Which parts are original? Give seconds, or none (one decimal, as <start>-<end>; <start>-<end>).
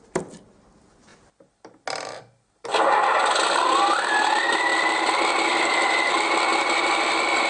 0.0-7.5